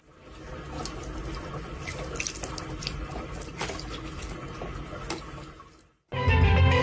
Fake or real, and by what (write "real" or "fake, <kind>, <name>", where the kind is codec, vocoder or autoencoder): real